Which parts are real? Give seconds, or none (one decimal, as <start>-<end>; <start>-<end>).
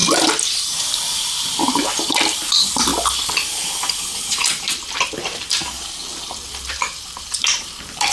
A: 2.9-4.2; 6.0-6.7